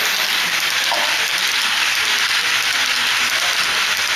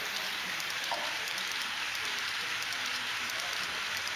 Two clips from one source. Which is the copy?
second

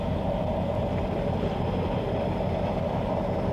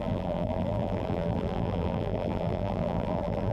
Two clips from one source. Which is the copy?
second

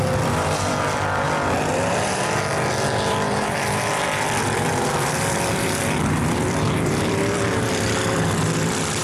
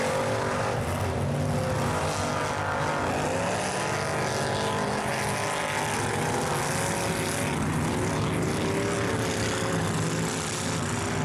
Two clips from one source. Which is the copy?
first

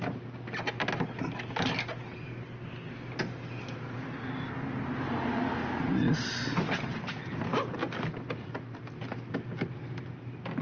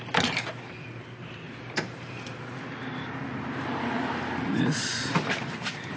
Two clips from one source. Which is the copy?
second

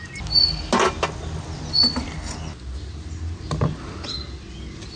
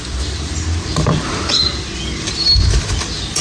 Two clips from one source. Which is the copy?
second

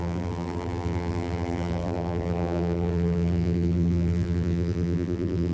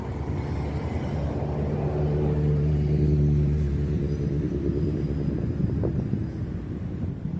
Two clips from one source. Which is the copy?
first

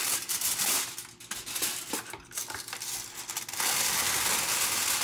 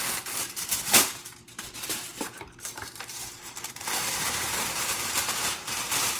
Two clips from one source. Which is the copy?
second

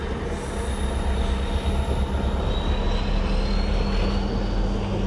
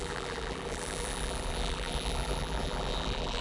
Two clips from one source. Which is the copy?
second